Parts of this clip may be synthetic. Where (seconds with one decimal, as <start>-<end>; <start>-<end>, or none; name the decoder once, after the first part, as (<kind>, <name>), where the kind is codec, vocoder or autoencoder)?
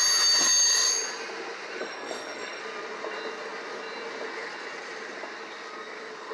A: 1.8-2.6 (codec, DAC)